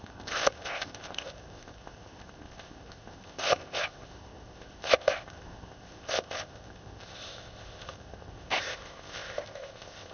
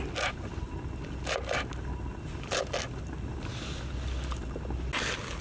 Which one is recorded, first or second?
second